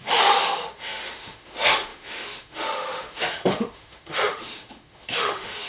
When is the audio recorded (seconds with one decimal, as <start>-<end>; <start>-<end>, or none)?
none